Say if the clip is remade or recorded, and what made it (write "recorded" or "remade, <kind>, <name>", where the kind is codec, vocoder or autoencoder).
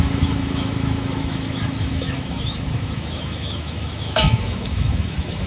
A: remade, autoencoder, DAC-VAE